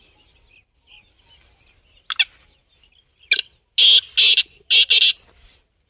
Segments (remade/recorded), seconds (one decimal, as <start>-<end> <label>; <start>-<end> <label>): 0.0-5.9 recorded